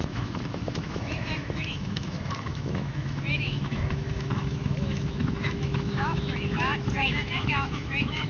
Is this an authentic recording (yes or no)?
no